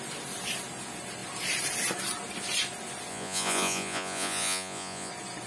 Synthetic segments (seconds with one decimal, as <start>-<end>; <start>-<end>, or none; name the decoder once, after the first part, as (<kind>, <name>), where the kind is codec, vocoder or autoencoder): 3.1-5.1 (vocoder, Vocos)